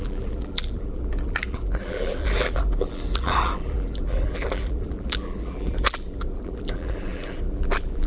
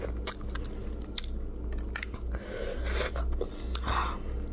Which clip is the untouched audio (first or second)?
second